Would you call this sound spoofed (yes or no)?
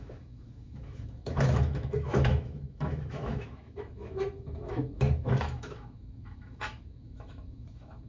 yes